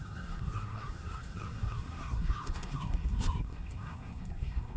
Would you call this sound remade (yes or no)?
yes